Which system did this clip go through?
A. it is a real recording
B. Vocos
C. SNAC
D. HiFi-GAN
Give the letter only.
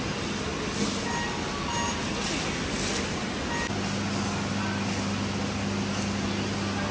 A